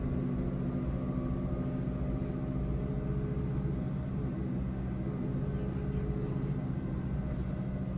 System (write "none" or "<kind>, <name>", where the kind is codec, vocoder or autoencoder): none